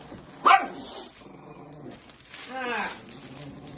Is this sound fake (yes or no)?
no